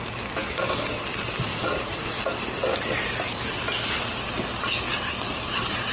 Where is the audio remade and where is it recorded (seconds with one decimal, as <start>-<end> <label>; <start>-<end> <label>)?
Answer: 0.0-1.5 recorded; 1.5-2.2 remade; 2.2-5.9 recorded